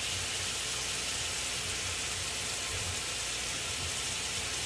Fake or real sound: real